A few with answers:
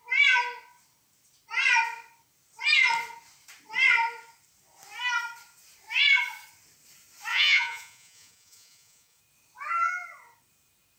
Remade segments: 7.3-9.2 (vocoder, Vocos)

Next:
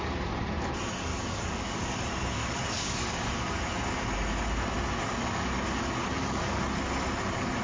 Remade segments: 1.1-2.0 (codec, DAC); 2.4-3.3; 6.0-6.6

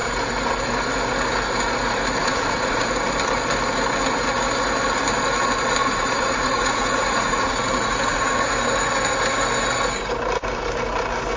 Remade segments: 2.2-2.9 (vocoder, Vocos); 5.8-8.5

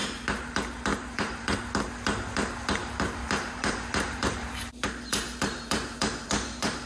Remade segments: 0.0-0.5 (vocoder, BigVGAN v2); 0.9-1.6; 2.8-6.9

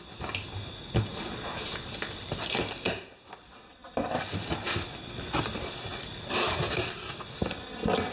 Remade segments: 1.1-3.0 (vocoder, BigVGAN v2); 3.8-4.5

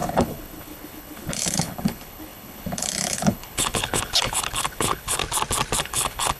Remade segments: 0.0-5.2 (codec, HILCodec); 5.8-6.4